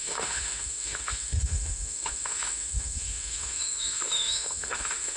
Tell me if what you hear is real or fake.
fake